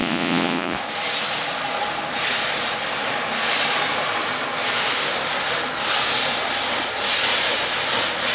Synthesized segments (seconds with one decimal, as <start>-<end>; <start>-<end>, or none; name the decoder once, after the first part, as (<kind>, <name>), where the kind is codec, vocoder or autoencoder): 0.0-0.8 (vocoder, Vocos)